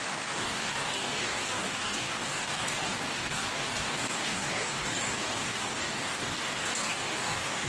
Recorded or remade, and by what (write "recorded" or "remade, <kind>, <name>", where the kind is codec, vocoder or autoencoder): remade, codec, DAC